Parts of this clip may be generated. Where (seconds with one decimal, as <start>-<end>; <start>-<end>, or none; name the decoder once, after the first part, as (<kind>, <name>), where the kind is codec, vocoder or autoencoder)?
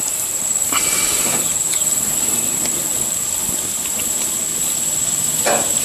none